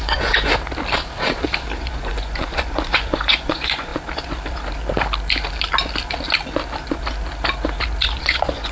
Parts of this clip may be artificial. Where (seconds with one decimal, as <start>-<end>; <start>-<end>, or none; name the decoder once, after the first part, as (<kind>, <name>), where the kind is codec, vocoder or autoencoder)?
0.0-0.5 (vocoder, Vocos); 1.8-3.9; 8.2-8.7

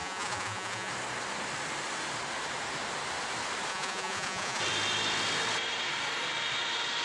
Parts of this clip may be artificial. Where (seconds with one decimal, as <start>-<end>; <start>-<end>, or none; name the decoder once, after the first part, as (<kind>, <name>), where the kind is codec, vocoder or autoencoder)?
0.0-0.9 (vocoder, Vocos); 3.7-4.6

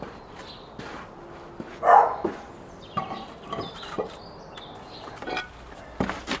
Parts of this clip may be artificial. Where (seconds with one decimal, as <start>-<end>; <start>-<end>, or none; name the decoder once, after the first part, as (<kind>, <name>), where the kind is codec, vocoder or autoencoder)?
1.7-2.5 (vocoder, Vocos)